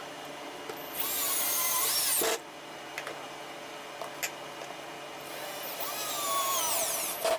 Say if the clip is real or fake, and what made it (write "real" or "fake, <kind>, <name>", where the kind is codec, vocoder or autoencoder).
real